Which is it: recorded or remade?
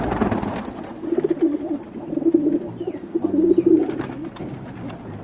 recorded